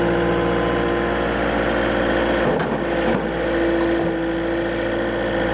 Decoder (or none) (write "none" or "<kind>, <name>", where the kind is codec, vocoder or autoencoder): none